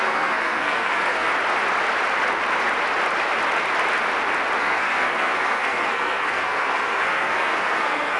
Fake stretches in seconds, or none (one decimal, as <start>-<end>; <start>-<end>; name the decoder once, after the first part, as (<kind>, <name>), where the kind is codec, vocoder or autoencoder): 0.0-1.3 (codec, SNAC); 4.6-8.2

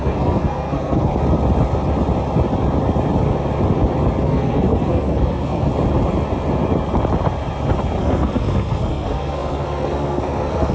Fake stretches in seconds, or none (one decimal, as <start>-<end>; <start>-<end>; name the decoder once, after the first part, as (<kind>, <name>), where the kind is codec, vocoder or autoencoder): 0.0-1.1 (codec, SNAC); 4.2-5.7; 8.0-10.7

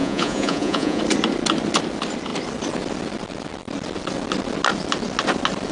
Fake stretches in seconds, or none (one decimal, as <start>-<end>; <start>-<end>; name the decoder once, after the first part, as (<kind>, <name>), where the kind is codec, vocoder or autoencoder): 0.0-1.0 (vocoder, Vocos)